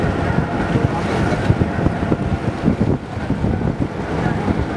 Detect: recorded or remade recorded